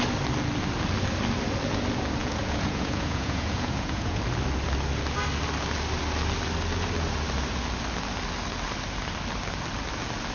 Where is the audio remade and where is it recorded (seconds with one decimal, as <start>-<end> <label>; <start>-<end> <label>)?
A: 0.0-2.2 recorded; 2.2-4.2 remade; 4.2-10.3 recorded